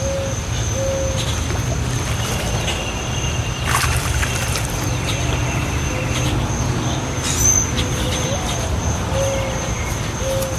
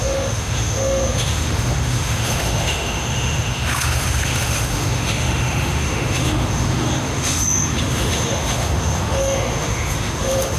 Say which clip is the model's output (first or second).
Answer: second